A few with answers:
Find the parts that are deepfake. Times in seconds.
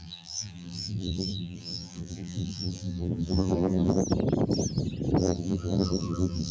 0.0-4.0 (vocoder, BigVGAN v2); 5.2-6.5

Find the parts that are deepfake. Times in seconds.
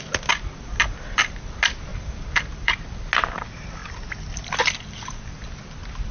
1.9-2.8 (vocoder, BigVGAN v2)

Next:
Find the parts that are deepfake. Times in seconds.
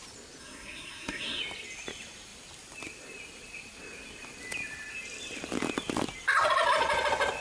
0.4-1.4 (codec, SNAC)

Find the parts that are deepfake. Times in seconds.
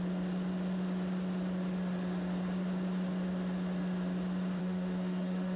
4.6-5.6 (autoencoder, DAC-VAE)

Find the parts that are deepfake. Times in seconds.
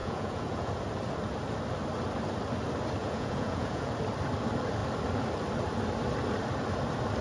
0.0-0.7 (vocoder, Vocos); 3.0-3.9